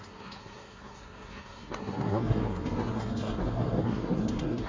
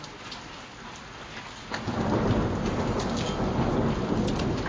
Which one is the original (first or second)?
second